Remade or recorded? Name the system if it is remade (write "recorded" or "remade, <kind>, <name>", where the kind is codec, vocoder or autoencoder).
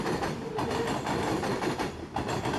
recorded